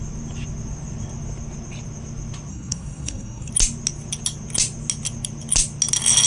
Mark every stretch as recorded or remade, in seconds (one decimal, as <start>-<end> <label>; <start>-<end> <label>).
0.0-2.5 recorded; 2.5-3.5 remade; 3.5-6.3 recorded